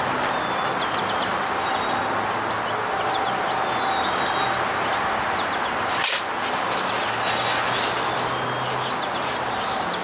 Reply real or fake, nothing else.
real